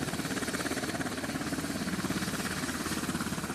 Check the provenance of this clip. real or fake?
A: real